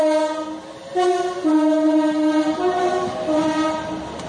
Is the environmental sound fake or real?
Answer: real